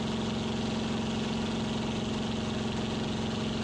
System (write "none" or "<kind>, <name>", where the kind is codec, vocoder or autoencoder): none